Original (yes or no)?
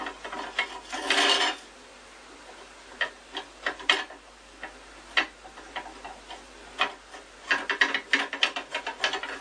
yes